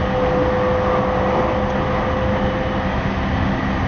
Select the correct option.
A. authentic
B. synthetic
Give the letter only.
A